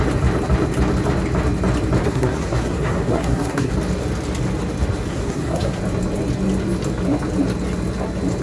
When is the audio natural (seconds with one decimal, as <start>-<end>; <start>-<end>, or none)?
0.0-2.0; 3.7-5.1; 5.8-8.4